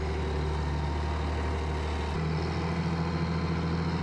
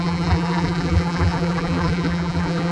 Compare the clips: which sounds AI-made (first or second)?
second